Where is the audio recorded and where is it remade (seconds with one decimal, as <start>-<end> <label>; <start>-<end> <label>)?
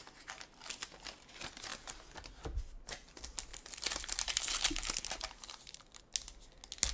0.0-3.5 recorded; 3.5-6.0 remade; 6.0-6.9 recorded